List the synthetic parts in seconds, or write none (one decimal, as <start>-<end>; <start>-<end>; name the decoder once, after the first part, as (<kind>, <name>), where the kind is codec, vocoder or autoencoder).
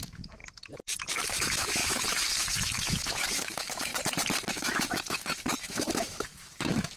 0.0-0.4 (autoencoder, DAC-VAE); 1.3-3.9; 4.5-7.0